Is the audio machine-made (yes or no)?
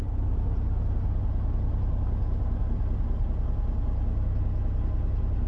no